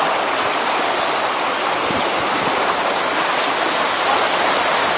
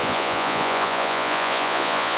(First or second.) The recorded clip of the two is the first